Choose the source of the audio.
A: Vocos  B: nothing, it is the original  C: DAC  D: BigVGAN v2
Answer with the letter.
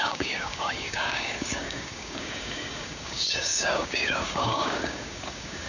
C